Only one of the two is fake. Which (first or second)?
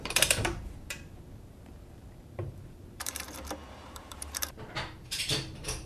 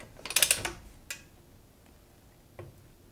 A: first